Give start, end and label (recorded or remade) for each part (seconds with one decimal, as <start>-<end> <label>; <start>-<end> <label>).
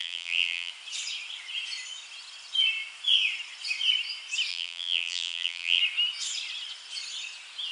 0.0-0.7 remade; 0.7-4.5 recorded; 4.5-5.8 remade; 5.8-7.7 recorded